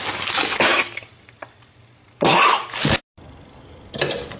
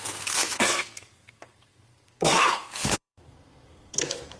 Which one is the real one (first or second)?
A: first